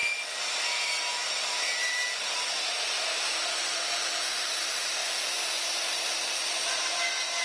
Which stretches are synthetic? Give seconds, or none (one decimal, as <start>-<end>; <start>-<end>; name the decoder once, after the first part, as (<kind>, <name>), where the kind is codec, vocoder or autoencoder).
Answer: none